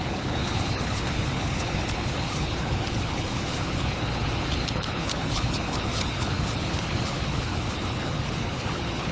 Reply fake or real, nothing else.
fake